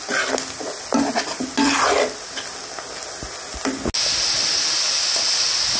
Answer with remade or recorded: recorded